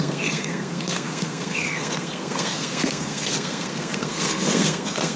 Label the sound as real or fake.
fake